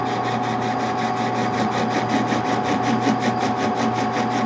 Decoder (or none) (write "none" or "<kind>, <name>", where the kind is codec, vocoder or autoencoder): none